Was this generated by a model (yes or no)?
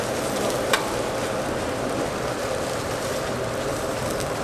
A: no